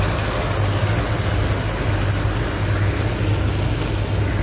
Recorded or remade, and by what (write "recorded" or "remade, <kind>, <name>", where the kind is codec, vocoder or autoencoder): recorded